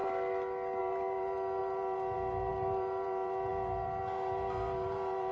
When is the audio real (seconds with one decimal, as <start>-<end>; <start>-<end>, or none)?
0.0-0.8